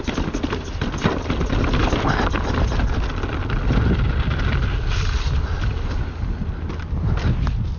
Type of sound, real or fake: real